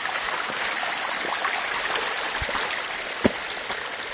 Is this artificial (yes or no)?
no